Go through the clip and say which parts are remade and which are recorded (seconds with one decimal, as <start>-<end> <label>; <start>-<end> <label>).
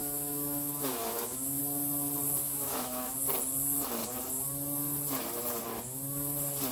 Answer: 0.0-1.6 remade; 1.6-2.4 recorded; 2.4-3.1 remade; 3.1-6.7 recorded